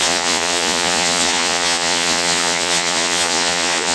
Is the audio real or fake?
fake